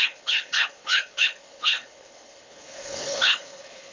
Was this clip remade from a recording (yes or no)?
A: yes